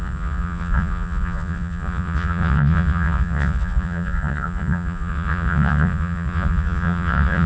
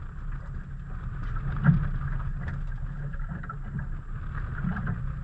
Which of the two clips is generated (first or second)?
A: first